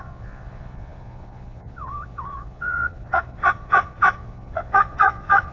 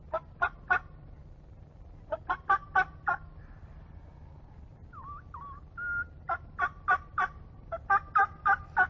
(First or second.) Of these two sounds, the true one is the second